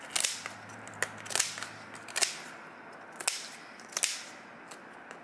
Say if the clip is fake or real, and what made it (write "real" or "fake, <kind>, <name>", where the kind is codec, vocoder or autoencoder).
real